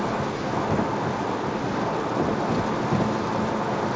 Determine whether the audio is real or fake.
real